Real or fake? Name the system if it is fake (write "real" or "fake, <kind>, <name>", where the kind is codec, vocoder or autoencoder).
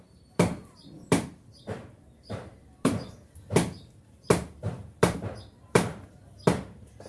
fake, vocoder, BigVGAN v2